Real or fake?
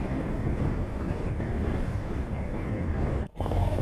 fake